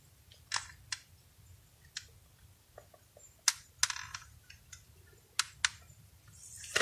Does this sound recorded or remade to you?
recorded